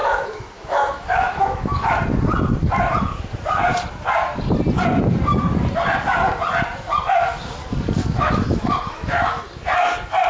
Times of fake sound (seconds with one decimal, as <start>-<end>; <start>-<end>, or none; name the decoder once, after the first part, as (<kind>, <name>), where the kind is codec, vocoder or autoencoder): 0.0-2.0 (autoencoder, DAC-VAE); 8.0-9.4